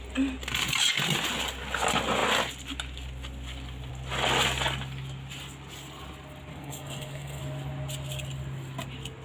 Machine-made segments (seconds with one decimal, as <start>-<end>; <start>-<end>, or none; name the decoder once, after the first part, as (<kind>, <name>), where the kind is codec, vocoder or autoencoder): 6.5-7.4 (codec, SNAC)